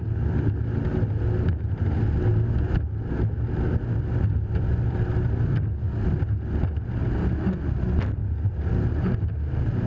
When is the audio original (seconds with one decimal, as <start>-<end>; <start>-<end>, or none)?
0.0-9.9